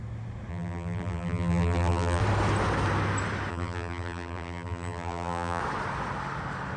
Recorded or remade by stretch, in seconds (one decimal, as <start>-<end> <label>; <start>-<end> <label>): 0.0-0.5 recorded; 0.5-2.2 remade; 2.2-3.5 recorded; 3.5-5.6 remade; 5.6-6.8 recorded